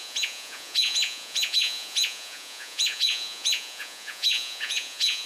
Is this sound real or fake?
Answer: fake